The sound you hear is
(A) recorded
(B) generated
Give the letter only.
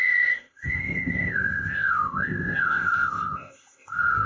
B